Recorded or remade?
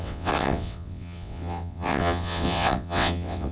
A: remade